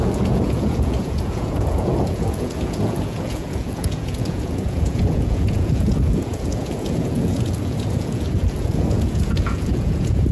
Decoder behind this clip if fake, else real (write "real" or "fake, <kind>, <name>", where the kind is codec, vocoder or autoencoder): fake, vocoder, Vocos